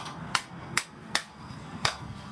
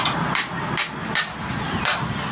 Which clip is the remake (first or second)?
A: first